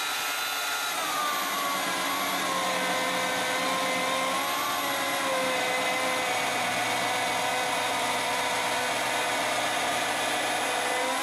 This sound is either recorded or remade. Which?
recorded